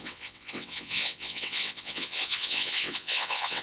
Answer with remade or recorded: remade